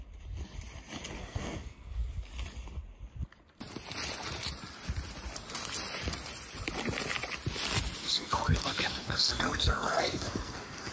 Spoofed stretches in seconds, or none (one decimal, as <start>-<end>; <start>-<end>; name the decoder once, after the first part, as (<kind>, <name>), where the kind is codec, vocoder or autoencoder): 1.2-2.0 (codec, SNAC); 8.0-10.9